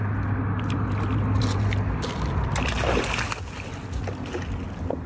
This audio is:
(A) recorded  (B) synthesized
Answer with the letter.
A